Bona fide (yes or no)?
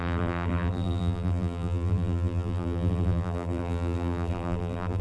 no